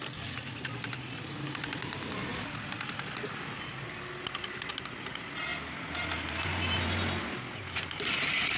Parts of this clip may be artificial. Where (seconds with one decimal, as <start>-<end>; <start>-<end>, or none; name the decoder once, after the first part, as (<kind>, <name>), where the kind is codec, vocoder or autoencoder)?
none